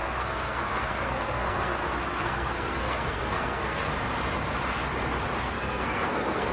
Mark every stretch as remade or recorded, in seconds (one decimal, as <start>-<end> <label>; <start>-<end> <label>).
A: 0.0-3.9 remade; 3.9-5.4 recorded; 5.4-6.5 remade